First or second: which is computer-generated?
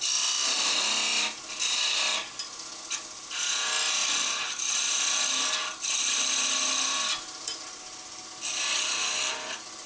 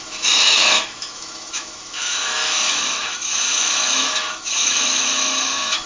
second